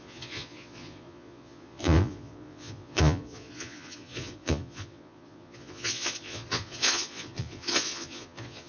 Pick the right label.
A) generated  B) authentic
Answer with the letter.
A